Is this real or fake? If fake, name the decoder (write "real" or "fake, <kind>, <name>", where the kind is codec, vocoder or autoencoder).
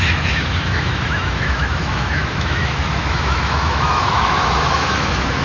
fake, autoencoder, DAC-VAE